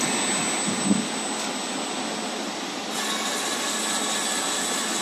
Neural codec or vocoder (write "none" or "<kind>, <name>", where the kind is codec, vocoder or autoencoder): none